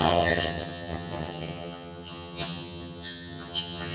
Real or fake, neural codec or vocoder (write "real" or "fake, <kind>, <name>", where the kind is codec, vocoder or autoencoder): fake, vocoder, HiFi-GAN